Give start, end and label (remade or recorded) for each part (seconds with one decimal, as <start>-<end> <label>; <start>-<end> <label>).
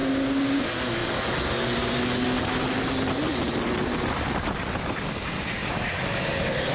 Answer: 0.0-0.6 remade; 0.6-6.7 recorded